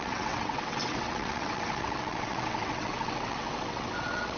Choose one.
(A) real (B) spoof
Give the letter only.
B